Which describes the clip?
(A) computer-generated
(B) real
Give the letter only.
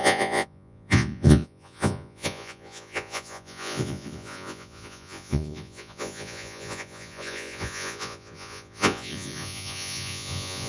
A